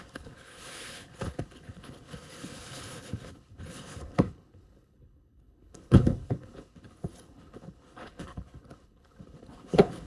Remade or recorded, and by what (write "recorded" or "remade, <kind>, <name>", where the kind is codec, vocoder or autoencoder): remade, codec, HILCodec